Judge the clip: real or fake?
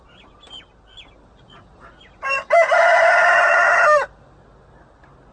real